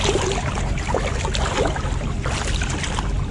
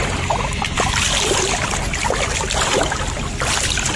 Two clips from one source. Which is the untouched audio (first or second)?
first